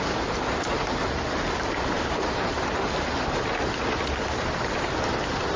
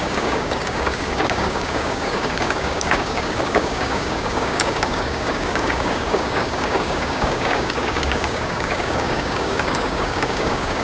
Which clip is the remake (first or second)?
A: second